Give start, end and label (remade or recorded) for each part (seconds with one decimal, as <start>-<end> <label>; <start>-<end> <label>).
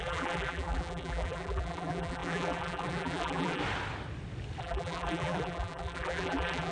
0.0-3.6 remade; 3.6-4.6 recorded; 4.6-6.7 remade